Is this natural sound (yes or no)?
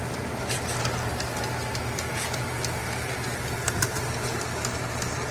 yes